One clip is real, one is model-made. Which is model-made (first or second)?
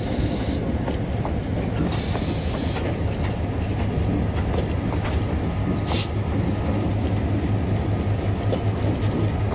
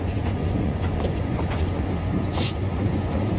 second